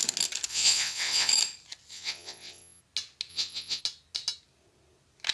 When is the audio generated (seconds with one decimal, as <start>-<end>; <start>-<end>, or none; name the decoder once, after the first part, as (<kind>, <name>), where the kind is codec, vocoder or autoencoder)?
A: 0.5-1.3 (vocoder, WaveNeXt); 1.9-2.8; 3.3-3.8